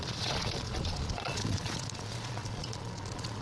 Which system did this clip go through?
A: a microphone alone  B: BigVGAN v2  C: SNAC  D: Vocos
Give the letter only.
D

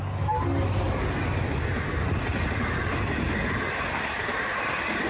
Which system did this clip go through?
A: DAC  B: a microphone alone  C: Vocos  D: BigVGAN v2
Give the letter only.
B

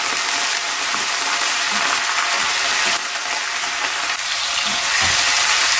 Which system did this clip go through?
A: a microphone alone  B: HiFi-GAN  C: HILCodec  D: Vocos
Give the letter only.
A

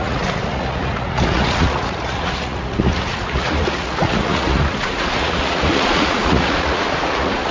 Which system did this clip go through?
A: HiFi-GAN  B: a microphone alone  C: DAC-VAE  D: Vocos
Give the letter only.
D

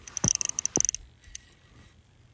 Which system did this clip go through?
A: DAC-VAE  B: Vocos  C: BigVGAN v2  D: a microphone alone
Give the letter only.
D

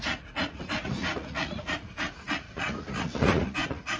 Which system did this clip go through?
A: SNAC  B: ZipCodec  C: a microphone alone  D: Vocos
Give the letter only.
D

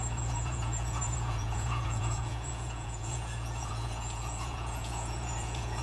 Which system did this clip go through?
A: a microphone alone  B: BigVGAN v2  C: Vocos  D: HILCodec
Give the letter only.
C